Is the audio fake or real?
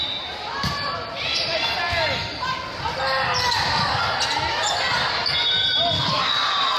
real